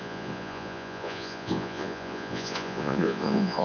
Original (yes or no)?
no